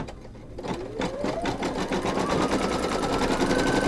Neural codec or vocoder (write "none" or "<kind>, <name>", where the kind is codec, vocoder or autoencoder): none